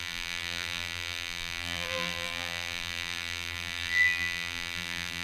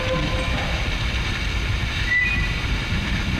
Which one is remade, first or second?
first